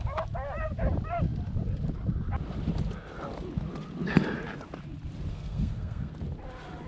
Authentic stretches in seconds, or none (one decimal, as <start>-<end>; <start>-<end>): 0.0-5.3; 6.1-6.9

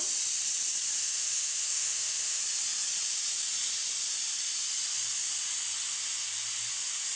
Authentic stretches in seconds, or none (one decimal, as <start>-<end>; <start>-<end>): 0.0-1.0; 2.4-7.2